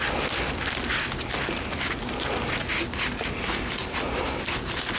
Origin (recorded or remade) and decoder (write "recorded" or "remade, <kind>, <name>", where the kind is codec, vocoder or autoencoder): recorded